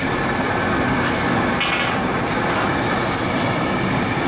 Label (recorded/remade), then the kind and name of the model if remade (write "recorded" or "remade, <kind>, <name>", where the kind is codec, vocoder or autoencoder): recorded